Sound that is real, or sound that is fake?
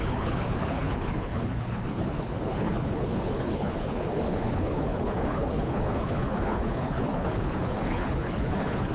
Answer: fake